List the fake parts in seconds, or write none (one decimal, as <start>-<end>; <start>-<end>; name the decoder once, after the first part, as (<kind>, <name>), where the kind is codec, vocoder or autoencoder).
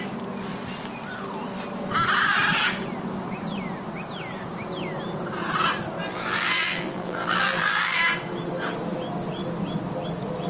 6.0-8.0 (vocoder, BigVGAN v2)